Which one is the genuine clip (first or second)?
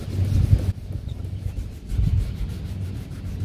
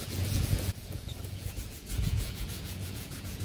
first